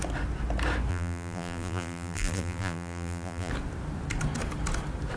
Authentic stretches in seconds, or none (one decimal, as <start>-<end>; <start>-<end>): 0.0-0.9; 3.5-5.2

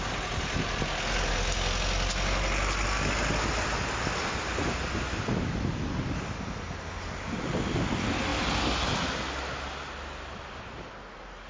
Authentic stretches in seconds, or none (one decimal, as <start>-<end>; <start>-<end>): 0.0-8.3; 8.8-11.5

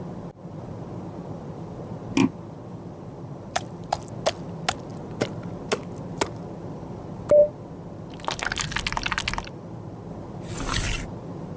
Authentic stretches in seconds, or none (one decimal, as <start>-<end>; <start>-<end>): 0.0-2.2; 4.1-11.6

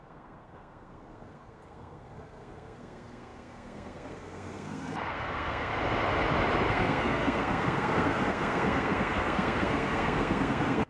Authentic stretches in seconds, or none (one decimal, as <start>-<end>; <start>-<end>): 5.7-6.7

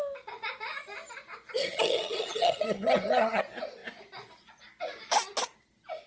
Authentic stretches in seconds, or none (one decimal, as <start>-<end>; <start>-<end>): 0.0-1.6; 3.4-6.1

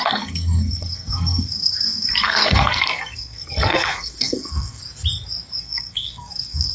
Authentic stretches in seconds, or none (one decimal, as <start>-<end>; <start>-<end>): 4.8-5.6

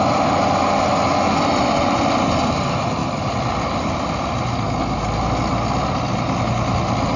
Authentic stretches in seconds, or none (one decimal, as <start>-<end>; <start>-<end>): 0.0-7.2